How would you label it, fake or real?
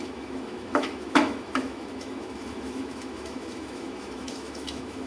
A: fake